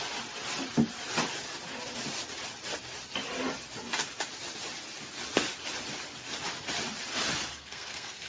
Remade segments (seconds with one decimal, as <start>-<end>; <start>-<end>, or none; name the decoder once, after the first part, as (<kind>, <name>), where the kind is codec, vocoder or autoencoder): 7.5-8.3 (codec, SNAC)